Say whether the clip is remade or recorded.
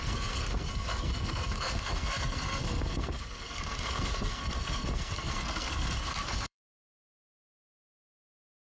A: remade